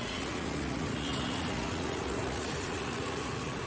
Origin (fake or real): fake